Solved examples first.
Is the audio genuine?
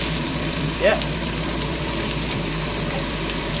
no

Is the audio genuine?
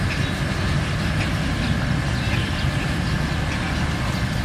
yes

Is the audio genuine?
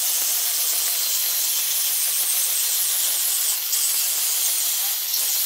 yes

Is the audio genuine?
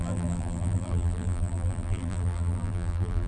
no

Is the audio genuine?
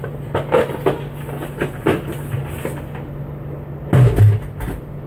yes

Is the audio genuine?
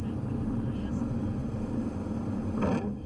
yes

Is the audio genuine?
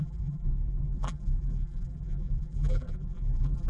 no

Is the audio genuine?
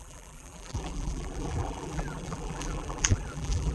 no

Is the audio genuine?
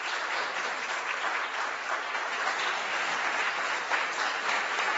no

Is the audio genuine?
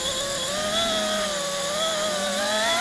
yes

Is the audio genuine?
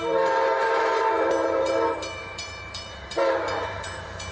no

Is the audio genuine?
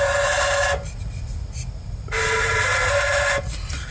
yes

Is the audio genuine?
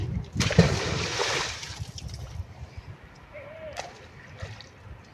yes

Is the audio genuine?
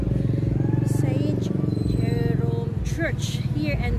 yes